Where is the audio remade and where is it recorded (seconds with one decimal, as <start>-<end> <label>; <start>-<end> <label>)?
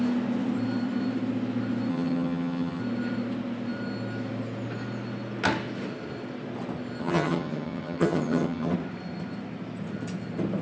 0.0-1.9 recorded; 1.9-2.8 remade; 2.8-7.0 recorded; 7.0-8.7 remade; 8.7-10.6 recorded